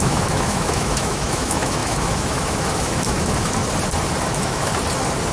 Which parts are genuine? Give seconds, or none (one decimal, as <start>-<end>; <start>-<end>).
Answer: 3.6-4.3; 4.7-5.3

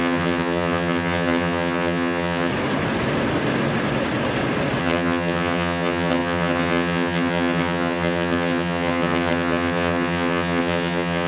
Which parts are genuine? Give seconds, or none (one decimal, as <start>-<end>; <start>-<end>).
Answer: 2.5-4.8